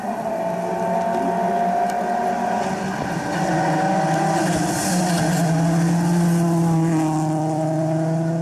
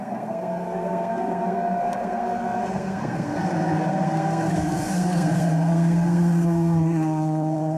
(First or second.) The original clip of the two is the first